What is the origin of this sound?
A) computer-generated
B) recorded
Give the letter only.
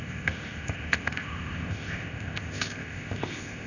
A